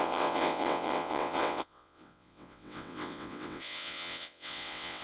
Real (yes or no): no